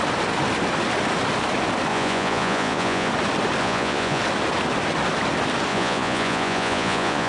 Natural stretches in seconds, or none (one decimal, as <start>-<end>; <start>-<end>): 0.0-1.9; 3.1-3.6; 4.2-5.7